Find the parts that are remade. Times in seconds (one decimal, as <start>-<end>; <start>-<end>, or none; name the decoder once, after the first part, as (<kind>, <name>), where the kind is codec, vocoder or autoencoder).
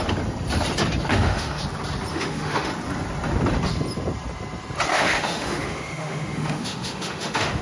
1.1-1.6 (autoencoder, DAC-VAE); 2.1-2.7; 4.9-7.6